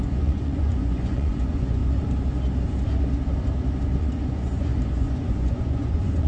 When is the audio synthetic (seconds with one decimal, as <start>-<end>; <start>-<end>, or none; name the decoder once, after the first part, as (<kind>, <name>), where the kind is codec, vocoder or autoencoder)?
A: 0.0-1.8 (vocoder, Vocos); 4.0-6.3